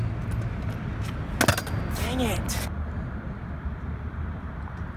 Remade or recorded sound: recorded